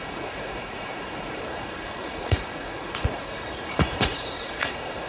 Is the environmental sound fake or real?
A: fake